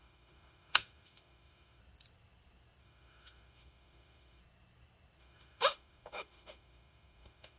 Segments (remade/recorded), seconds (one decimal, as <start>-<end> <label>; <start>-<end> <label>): 0.0-1.8 remade; 1.8-2.8 recorded; 2.8-4.4 remade; 4.4-5.2 recorded; 5.2-7.6 remade